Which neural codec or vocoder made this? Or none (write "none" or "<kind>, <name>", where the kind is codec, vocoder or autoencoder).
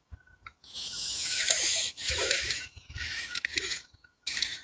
autoencoder, DAC-VAE